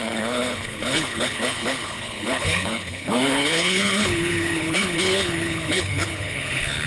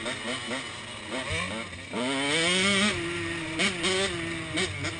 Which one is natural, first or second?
second